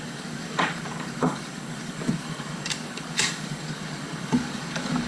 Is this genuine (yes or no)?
no